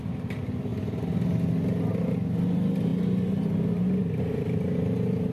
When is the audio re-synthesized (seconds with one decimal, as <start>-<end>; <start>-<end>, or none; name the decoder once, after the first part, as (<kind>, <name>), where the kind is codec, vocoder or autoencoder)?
none

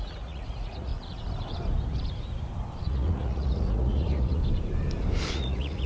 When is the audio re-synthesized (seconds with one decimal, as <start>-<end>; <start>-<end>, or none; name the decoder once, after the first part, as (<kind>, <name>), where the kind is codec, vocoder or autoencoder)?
0.0-0.9 (vocoder, Vocos); 2.8-4.4; 5.3-5.9

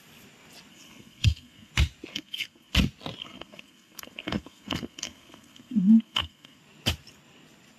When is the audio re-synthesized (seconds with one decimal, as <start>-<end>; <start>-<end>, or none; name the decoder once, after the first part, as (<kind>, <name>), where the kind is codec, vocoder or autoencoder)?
0.7-1.7 (codec, SNAC); 2.1-2.7; 3.2-6.6

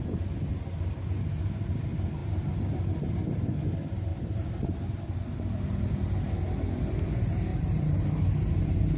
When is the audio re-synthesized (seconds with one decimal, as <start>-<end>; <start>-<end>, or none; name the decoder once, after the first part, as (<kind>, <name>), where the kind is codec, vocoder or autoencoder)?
4.1-5.0 (vocoder, BigVGAN v2); 7.5-9.0

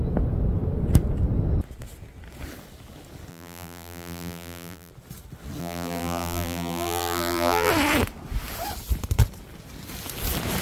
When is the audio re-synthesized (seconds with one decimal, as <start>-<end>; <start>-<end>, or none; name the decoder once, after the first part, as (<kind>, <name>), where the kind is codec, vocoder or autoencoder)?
3.3-4.9 (vocoder, BigVGAN v2); 5.6-7.7